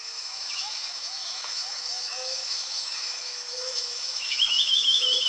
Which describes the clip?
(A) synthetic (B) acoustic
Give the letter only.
A